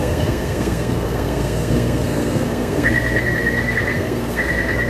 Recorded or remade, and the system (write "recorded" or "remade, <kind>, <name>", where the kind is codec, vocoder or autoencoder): remade, codec, SNAC